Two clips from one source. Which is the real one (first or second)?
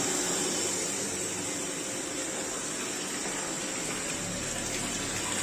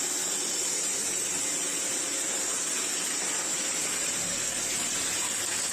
first